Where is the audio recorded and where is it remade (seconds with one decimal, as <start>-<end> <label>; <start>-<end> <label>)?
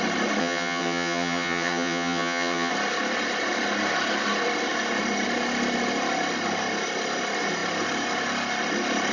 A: 0.0-0.4 recorded; 0.4-2.7 remade; 2.7-9.1 recorded